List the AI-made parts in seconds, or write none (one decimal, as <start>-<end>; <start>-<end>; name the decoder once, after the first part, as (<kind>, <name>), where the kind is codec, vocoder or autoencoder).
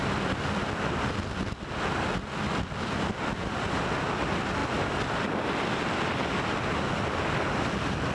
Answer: none